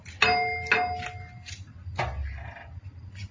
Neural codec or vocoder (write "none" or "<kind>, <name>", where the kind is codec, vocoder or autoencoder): none